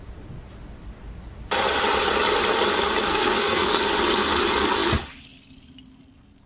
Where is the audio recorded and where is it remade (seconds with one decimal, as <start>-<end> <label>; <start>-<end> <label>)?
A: 0.0-3.1 recorded; 3.1-3.8 remade; 3.8-6.5 recorded